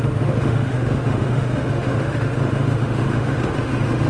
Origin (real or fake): fake